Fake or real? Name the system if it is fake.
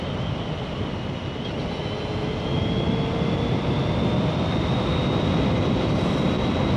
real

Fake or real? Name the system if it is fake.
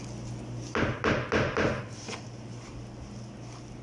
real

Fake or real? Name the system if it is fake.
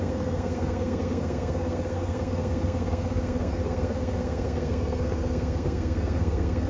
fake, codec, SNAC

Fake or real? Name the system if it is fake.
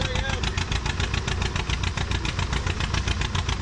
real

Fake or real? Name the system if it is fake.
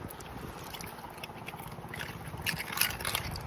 real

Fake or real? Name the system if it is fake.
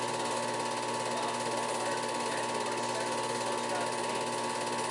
real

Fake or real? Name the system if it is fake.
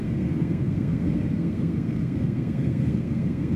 fake, codec, SNAC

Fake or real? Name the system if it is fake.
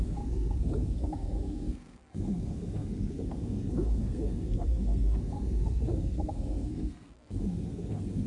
fake, codec, SNAC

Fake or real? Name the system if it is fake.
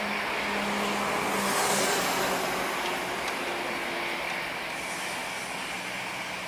real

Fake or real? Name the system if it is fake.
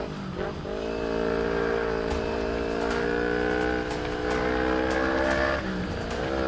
real